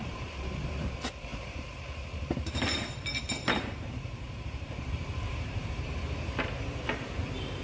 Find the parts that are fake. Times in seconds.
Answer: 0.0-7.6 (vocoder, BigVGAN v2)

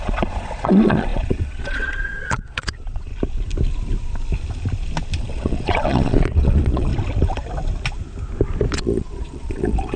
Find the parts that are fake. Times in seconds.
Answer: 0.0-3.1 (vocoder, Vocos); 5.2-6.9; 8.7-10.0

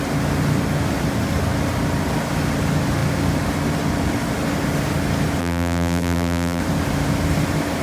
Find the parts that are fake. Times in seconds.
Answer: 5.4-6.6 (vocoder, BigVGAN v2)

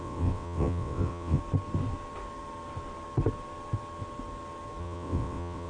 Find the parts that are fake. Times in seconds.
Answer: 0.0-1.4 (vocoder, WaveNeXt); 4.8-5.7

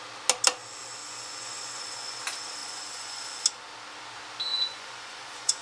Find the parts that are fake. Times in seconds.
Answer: 1.0-2.2 (vocoder, Vocos); 2.6-3.2; 4.5-5.6

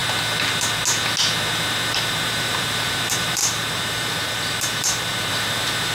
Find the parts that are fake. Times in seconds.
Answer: 1.9-5.9 (vocoder, BigVGAN v2)

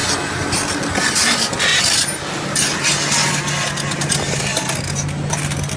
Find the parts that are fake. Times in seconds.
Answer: none